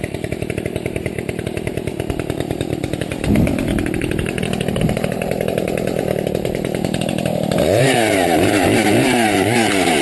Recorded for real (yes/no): no